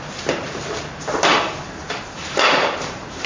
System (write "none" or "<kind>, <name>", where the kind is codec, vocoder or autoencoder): vocoder, BigVGAN v2